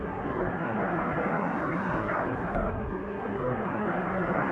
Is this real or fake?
fake